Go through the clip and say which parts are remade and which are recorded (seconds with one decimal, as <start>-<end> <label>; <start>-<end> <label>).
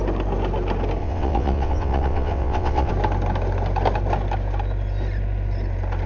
0.0-1.0 recorded; 1.0-2.9 remade; 2.9-6.1 recorded